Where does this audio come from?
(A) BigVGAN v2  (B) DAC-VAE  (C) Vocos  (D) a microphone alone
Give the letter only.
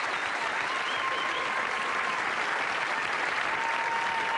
A